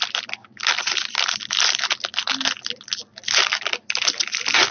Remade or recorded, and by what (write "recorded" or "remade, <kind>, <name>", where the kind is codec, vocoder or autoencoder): recorded